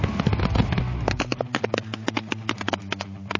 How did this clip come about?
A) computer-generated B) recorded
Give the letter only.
B